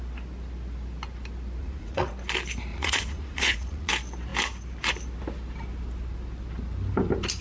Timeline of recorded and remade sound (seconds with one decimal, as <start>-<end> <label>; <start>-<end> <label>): 0.0-1.6 recorded; 1.6-2.1 remade; 2.1-2.7 recorded; 2.7-3.9 remade; 3.9-7.4 recorded